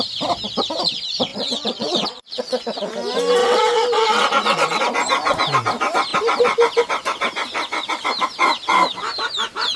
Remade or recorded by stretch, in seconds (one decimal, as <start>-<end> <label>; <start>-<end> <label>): 0.0-1.3 recorded; 1.3-2.9 remade; 2.9-3.4 recorded; 3.4-4.8 remade; 4.8-9.8 recorded